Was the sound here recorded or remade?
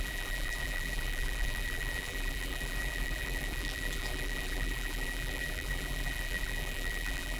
remade